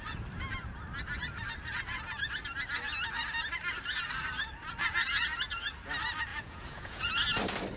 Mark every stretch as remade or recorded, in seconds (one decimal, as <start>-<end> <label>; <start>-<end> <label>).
0.0-6.3 recorded; 6.3-7.1 remade; 7.1-7.8 recorded